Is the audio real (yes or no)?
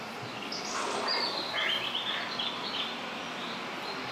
yes